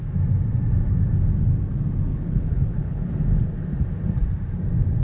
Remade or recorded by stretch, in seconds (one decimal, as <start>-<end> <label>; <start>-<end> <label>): 0.0-2.1 recorded; 2.1-3.1 remade; 3.1-5.0 recorded